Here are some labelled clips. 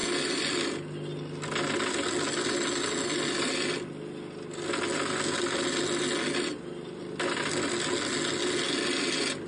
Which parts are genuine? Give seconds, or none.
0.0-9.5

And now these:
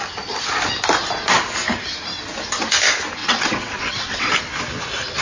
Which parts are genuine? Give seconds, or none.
0.0-3.2; 4.3-5.2

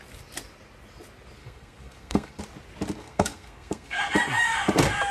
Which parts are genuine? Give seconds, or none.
0.0-1.4; 2.4-3.0; 4.0-5.1

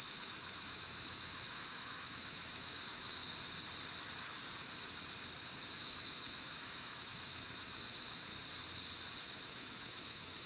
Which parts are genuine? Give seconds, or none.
3.2-5.8; 8.3-9.2

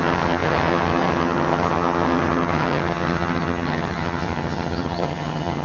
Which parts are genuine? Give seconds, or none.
none

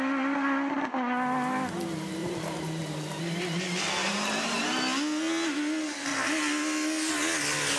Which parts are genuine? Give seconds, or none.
0.0-2.2; 3.2-4.0; 4.6-7.8

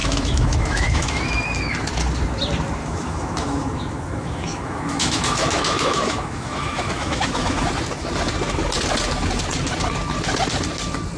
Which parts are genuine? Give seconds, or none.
1.2-2.8; 7.7-11.2